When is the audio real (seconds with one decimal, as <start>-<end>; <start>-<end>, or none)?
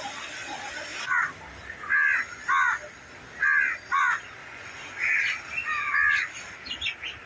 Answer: 0.0-4.4; 4.9-7.3